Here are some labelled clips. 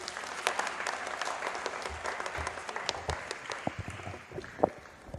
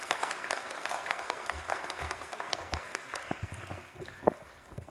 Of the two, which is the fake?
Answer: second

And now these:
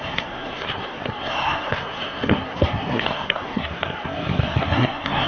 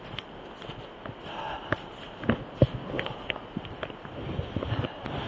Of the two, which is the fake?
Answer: first